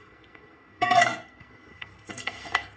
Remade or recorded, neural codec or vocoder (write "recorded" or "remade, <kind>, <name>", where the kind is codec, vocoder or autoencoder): remade, codec, SNAC